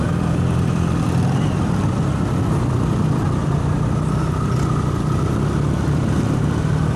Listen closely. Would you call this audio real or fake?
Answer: fake